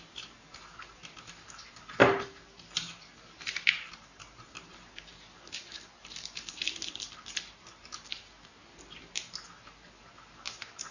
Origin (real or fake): fake